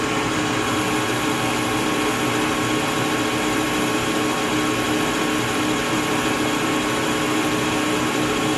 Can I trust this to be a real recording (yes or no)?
yes